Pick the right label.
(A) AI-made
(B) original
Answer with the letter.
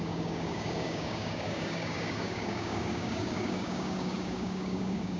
A